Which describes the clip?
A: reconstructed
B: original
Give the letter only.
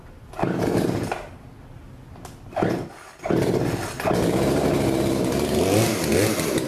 B